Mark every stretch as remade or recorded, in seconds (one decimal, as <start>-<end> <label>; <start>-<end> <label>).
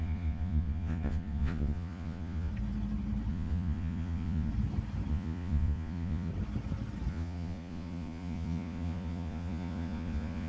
0.0-2.5 remade; 2.5-3.3 recorded; 3.3-4.5 remade; 4.5-5.1 recorded; 5.1-6.3 remade; 6.3-7.1 recorded; 7.1-10.5 remade